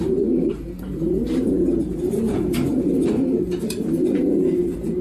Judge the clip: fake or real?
fake